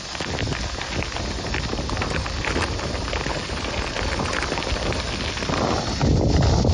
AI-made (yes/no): no